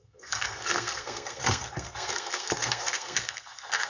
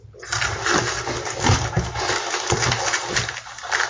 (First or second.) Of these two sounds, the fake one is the first